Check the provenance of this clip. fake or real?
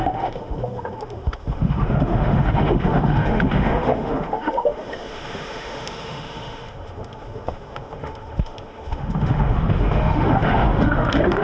fake